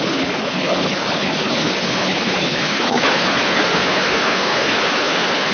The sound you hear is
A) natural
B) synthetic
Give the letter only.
B